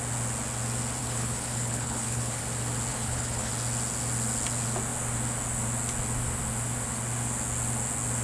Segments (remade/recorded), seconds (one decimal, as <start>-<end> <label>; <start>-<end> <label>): 0.0-1.0 recorded; 1.0-2.4 remade; 2.4-2.9 recorded; 2.9-3.5 remade; 3.5-8.2 recorded